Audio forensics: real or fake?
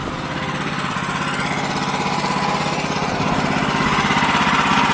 real